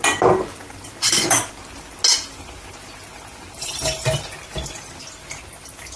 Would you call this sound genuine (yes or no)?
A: yes